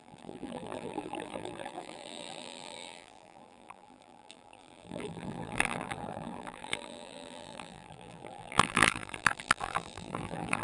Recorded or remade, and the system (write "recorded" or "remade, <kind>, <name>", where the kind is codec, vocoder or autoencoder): remade, vocoder, BigVGAN v2